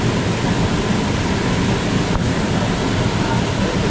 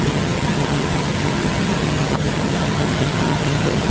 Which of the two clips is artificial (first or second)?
second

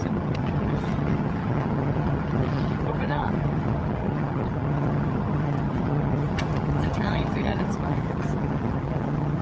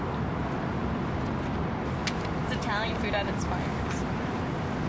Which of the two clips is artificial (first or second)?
first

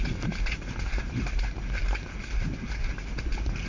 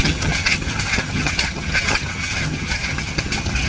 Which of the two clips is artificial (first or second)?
second